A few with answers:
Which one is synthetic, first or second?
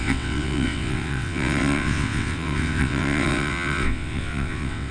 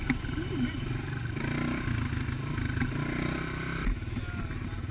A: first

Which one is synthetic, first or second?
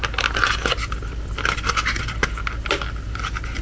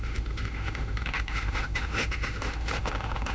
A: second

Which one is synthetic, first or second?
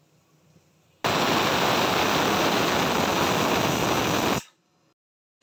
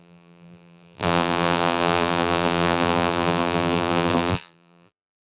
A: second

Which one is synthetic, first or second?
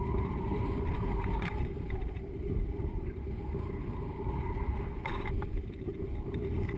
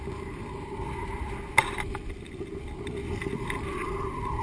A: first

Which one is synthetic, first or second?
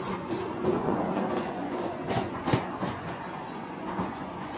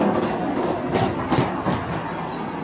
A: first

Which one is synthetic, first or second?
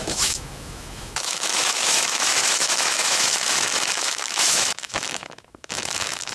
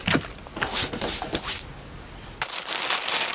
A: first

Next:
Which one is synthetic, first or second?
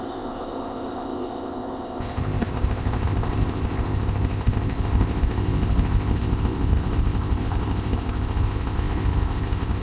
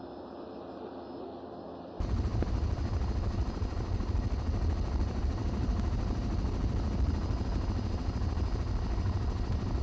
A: first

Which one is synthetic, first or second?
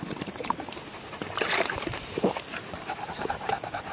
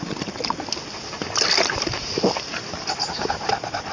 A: first